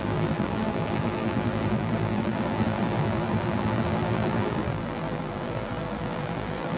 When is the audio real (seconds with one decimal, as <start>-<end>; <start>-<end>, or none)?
none